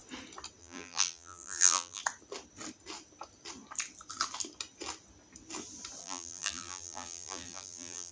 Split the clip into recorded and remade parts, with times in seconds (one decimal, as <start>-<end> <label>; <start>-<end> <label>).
0.0-0.6 recorded; 0.6-2.0 remade; 2.0-6.0 recorded; 6.0-8.1 remade